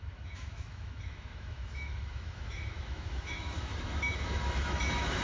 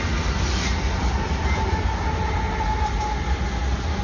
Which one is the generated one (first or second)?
first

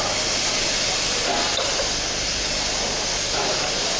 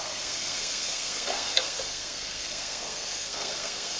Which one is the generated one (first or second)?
second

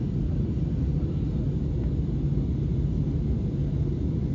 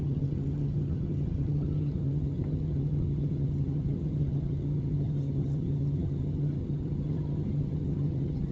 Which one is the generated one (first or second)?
second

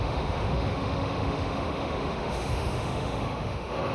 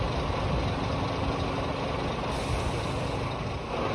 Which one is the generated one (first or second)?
first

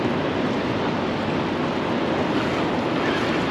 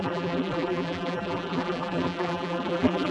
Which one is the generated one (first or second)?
second